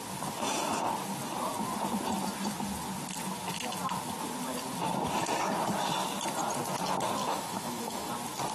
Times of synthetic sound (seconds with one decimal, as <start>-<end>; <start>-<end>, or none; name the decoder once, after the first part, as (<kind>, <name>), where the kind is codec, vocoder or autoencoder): 7.2-8.1 (autoencoder, DAC-VAE)